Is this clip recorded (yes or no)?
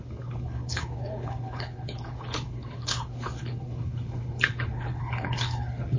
no